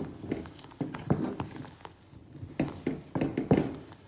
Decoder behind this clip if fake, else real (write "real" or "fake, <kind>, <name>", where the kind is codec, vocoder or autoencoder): real